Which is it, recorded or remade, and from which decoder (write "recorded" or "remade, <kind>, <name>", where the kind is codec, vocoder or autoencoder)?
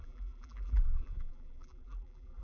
remade, vocoder, BigVGAN v2